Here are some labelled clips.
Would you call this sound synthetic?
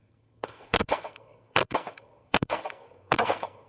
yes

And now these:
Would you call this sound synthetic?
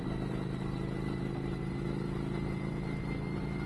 no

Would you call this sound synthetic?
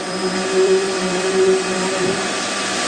yes